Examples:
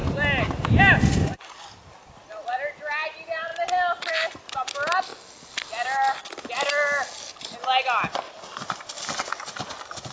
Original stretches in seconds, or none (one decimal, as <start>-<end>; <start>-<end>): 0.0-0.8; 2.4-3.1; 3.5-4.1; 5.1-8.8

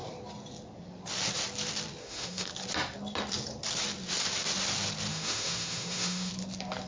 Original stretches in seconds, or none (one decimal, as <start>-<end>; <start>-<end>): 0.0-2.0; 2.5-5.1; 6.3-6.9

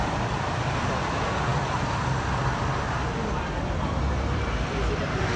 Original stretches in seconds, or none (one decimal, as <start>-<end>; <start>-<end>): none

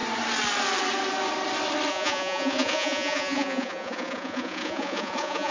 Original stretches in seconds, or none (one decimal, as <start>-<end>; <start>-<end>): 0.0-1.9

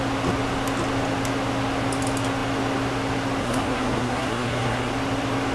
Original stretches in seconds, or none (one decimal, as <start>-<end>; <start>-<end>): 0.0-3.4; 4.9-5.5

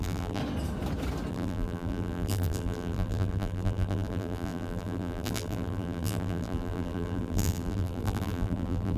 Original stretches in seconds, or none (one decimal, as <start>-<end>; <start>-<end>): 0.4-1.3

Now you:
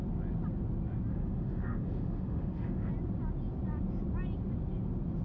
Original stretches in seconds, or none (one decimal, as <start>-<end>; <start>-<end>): 0.0-1.1; 2.9-5.2